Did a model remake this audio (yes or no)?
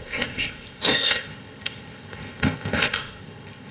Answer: yes